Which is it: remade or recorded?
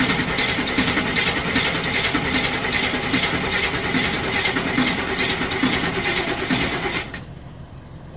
recorded